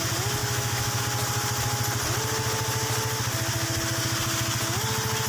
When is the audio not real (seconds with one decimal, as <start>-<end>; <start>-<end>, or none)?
0.4-1.0